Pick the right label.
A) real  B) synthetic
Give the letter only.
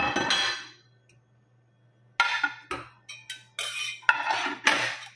A